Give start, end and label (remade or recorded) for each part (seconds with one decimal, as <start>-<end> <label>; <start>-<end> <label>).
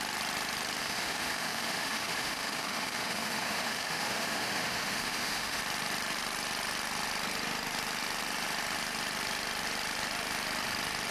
0.0-0.8 recorded; 0.8-5.6 remade; 5.6-11.1 recorded